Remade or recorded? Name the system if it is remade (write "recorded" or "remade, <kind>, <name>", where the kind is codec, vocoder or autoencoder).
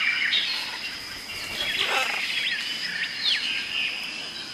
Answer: recorded